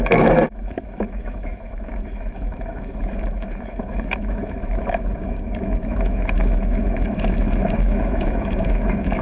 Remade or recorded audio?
remade